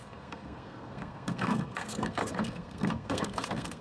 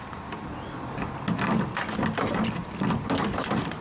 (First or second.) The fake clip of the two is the first